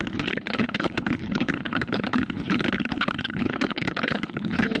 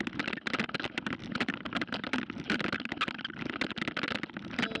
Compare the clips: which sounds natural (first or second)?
second